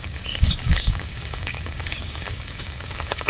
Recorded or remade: remade